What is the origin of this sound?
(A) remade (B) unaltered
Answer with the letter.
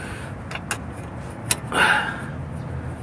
B